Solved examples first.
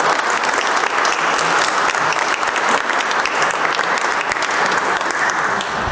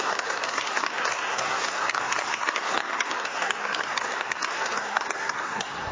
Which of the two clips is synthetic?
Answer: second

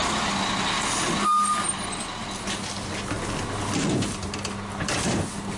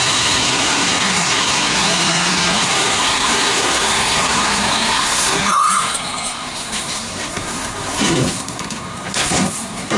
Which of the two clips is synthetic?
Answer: second